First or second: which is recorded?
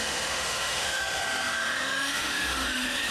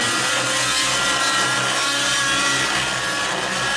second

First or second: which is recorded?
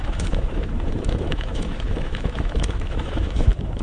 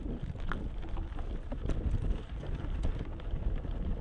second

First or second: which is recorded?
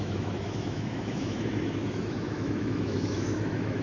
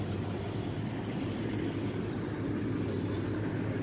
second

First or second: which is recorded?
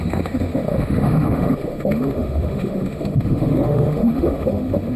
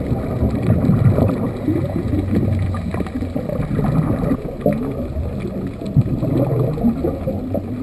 second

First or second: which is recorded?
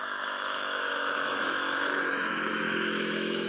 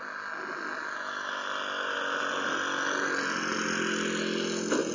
second